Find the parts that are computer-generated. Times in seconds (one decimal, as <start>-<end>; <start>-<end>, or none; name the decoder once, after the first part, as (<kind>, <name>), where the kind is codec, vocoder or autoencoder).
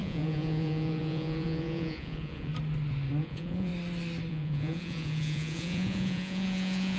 0.0-2.5 (vocoder, Vocos); 3.2-3.7; 4.3-7.0